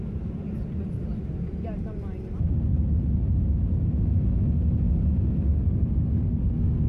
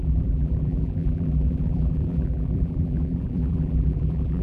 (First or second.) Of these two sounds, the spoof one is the second